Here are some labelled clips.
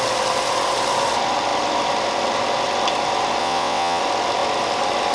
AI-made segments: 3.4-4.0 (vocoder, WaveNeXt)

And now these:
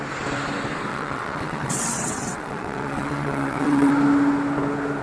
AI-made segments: 0.9-3.9 (vocoder, WaveNeXt)